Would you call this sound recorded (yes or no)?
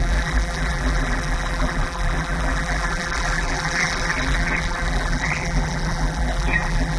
no